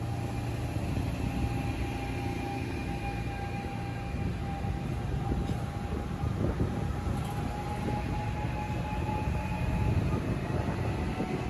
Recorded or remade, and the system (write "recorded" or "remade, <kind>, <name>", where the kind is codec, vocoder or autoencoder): recorded